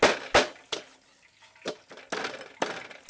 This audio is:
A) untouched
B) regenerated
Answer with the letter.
A